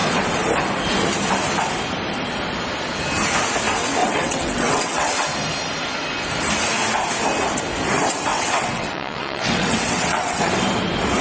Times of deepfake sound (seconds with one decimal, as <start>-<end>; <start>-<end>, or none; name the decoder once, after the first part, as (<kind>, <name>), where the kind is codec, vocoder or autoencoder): 4.0-5.1 (vocoder, WaveNeXt); 8.3-10.5